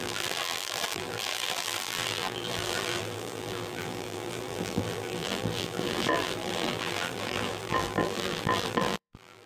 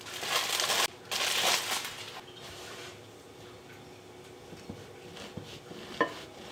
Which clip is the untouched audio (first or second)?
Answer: second